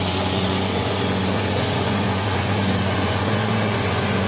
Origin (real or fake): fake